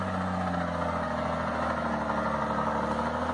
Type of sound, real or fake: real